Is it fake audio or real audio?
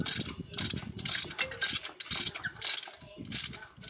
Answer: real